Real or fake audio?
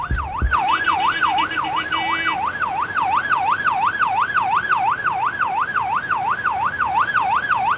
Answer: real